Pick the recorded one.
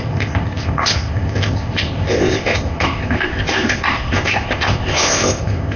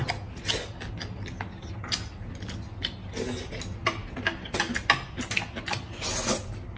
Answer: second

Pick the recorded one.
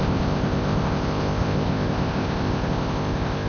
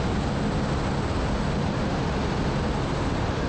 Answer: second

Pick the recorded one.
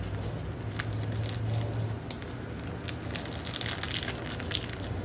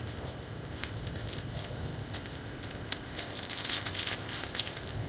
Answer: first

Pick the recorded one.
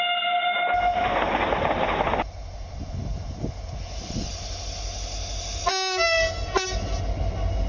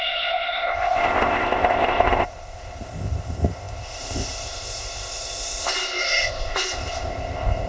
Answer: first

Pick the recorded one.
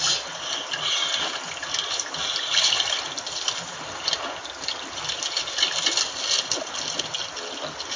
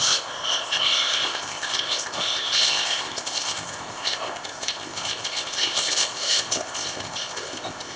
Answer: first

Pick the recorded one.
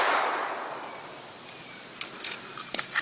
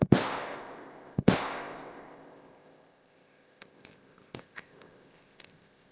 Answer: first